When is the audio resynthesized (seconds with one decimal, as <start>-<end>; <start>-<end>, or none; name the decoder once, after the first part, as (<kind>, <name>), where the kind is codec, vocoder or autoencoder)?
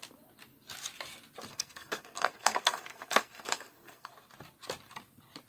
1.5-4.1 (codec, SNAC)